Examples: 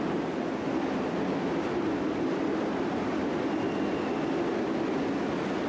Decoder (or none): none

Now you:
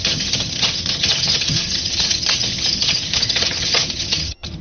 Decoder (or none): vocoder, HiFi-GAN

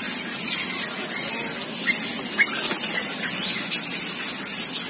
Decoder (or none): none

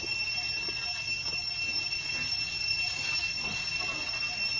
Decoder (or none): none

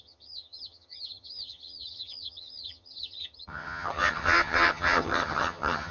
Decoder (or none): vocoder, HiFi-GAN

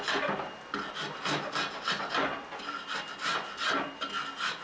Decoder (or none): none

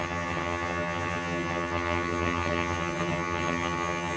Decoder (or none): vocoder, HiFi-GAN